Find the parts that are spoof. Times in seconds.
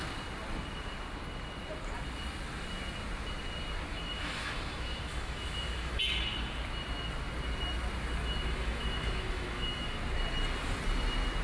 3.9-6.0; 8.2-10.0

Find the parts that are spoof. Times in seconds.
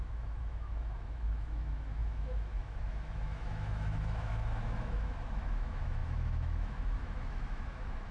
0.0-8.1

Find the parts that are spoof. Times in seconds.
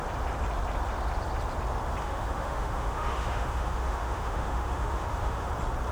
2.0-5.5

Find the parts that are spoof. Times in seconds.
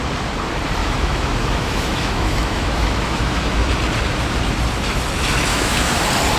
0.8-3.7; 5.5-6.0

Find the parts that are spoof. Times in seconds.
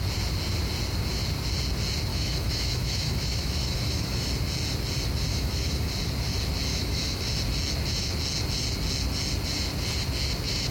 2.1-4.3; 5.3-5.9; 6.7-7.2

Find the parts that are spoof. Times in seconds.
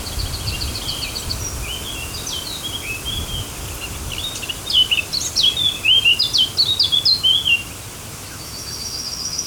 8.1-9.5